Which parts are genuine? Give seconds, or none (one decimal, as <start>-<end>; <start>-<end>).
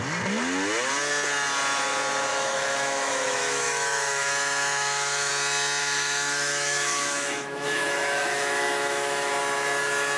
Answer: 0.0-2.3; 5.3-5.8; 9.3-10.2